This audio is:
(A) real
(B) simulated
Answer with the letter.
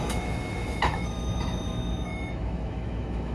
B